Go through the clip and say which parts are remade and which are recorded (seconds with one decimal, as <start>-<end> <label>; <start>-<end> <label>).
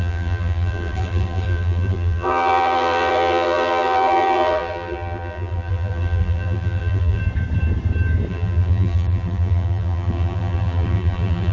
0.0-7.2 remade; 7.2-8.3 recorded; 8.3-11.5 remade